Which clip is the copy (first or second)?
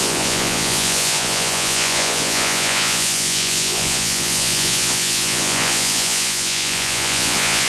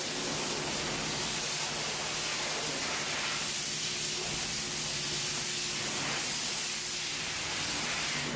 first